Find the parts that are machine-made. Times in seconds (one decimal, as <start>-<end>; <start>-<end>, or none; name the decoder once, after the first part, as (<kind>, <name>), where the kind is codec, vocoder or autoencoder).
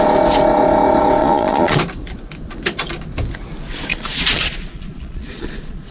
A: 1.2-1.8 (vocoder, Vocos); 3.9-5.9